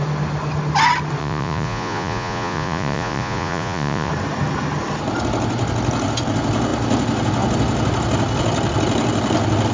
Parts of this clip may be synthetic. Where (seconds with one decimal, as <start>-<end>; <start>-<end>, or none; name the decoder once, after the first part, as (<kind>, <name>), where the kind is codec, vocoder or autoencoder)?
1.2-4.1 (vocoder, Vocos)